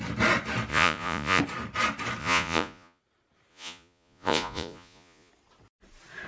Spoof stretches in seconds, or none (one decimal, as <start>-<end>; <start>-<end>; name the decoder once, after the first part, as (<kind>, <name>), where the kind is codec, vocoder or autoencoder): 0.7-1.4 (vocoder, Vocos); 2.2-3.0; 3.5-5.3